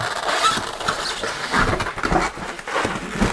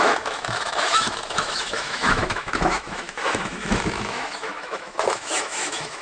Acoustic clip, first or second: first